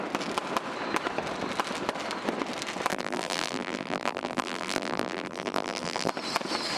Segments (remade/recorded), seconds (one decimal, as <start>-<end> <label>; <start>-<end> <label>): 0.0-2.9 recorded; 2.9-6.1 remade; 6.1-6.8 recorded

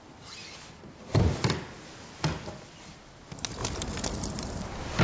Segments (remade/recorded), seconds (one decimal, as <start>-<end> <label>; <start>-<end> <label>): 0.0-0.4 recorded; 0.4-1.4 remade; 1.4-5.0 recorded

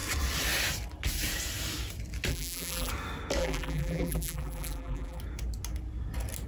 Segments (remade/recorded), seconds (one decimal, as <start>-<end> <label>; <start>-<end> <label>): 0.0-2.3 recorded; 2.3-2.9 remade; 2.9-3.4 recorded; 3.4-5.2 remade; 5.2-6.5 recorded

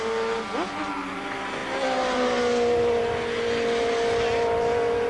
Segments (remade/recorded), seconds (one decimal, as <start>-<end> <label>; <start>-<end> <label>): 0.0-5.1 recorded

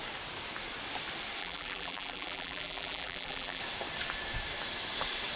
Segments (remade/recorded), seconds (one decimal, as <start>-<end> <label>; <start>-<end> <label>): 0.0-1.4 recorded; 1.4-3.6 remade; 3.6-5.4 recorded

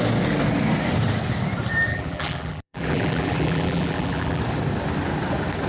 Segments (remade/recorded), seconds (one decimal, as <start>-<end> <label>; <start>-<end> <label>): 0.0-1.9 recorded; 1.9-4.4 remade; 4.4-5.7 recorded